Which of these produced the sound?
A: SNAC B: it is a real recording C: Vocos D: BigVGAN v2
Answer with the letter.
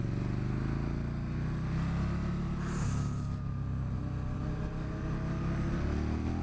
B